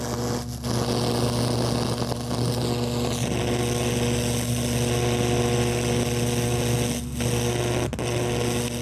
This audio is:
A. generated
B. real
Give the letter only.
B